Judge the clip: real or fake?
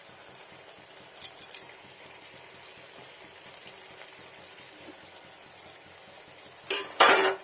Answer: real